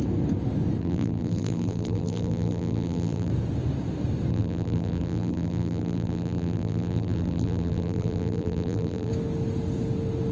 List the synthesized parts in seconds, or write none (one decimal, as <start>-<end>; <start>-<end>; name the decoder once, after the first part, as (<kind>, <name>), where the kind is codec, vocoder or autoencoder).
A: 0.8-3.3 (vocoder, BigVGAN v2); 4.3-9.1